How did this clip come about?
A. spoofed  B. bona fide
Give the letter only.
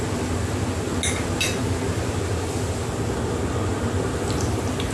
B